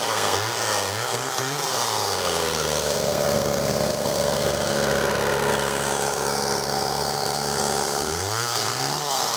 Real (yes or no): no